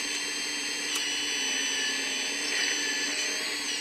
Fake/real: real